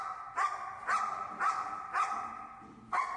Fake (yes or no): no